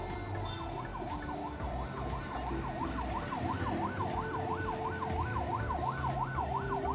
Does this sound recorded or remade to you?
recorded